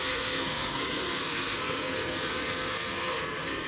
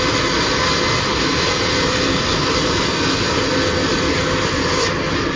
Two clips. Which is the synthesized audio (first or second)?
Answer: first